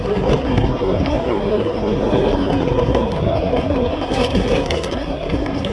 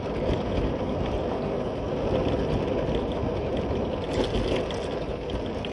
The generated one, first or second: first